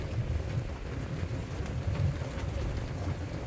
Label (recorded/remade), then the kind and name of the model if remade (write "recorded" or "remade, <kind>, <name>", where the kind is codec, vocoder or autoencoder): recorded